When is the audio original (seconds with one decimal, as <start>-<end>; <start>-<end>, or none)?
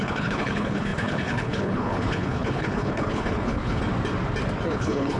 3.8-4.7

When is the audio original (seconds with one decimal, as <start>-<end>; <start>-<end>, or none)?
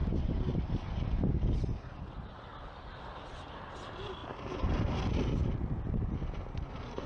0.0-7.1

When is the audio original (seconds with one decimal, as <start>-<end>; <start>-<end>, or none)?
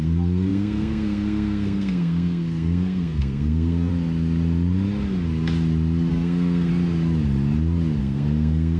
3.9-6.1; 6.7-8.0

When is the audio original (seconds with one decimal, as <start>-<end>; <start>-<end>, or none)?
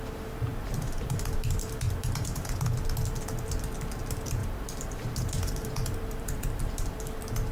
0.0-0.5; 2.5-4.4; 7.0-7.5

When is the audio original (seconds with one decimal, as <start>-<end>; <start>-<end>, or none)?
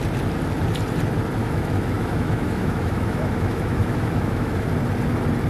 0.0-1.4; 4.7-5.5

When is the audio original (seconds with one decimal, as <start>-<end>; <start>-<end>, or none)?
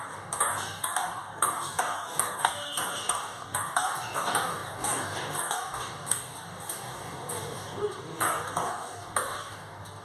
none